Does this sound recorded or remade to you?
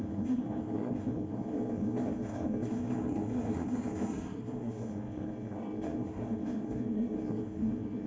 remade